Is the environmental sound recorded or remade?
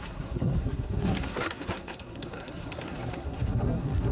remade